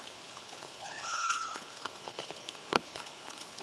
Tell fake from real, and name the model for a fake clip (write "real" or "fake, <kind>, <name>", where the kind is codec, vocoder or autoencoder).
fake, codec, HILCodec